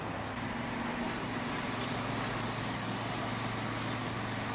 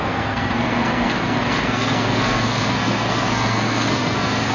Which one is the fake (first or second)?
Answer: second